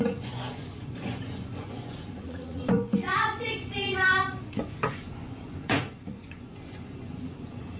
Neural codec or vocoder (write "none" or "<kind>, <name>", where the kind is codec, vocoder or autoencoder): vocoder, Vocos